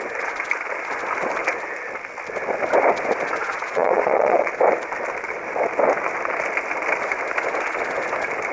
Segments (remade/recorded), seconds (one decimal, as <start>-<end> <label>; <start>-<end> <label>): 0.0-3.4 recorded; 3.4-4.5 remade; 4.5-8.5 recorded